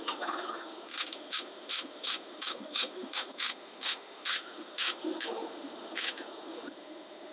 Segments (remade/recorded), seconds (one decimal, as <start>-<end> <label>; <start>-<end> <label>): 0.0-7.3 remade